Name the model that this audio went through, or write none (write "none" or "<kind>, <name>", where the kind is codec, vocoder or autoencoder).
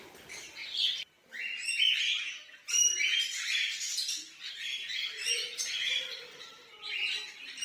vocoder, BigVGAN v2